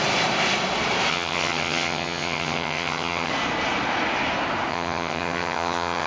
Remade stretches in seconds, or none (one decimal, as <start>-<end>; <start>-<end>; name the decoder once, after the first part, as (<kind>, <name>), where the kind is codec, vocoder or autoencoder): 1.1-3.3 (vocoder, HiFi-GAN); 4.7-6.1